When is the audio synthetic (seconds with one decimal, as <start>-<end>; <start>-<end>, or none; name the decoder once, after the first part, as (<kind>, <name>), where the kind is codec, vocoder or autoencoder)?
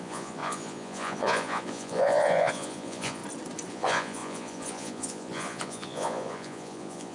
0.0-3.2 (vocoder, Vocos); 3.7-7.1